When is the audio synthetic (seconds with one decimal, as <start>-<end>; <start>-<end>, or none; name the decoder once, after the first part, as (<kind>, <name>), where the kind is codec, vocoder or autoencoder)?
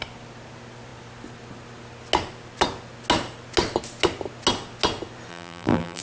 5.3-6.0 (vocoder, BigVGAN v2)